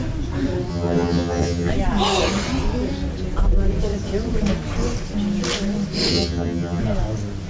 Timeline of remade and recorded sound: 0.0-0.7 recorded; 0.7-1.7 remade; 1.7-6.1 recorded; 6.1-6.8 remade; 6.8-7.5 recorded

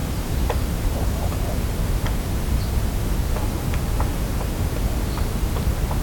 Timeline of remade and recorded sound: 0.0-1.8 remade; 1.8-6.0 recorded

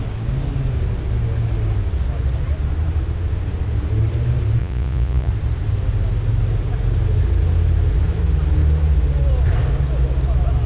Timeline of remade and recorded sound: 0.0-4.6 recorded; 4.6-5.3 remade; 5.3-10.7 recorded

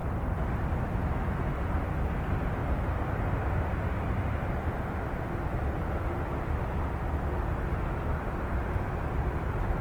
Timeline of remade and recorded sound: 0.0-0.7 remade; 0.7-9.8 recorded